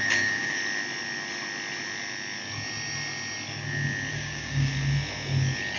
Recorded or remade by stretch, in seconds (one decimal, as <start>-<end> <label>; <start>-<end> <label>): 0.0-0.6 remade; 0.6-4.1 recorded; 4.1-4.7 remade; 4.7-5.8 recorded